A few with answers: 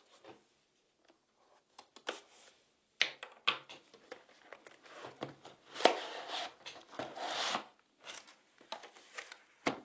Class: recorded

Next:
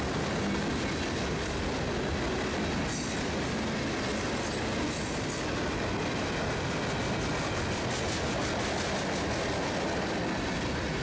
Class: recorded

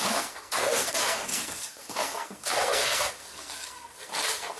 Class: remade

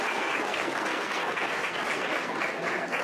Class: remade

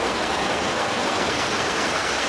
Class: remade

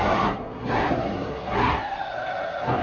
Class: remade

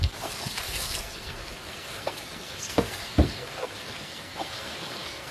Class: remade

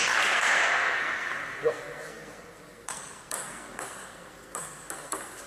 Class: remade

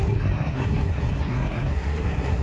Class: remade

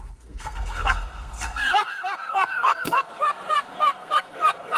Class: remade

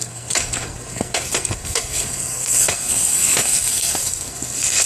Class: remade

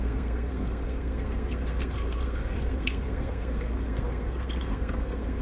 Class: remade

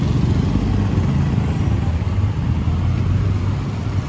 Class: recorded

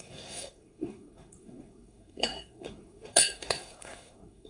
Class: remade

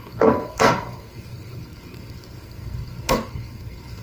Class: remade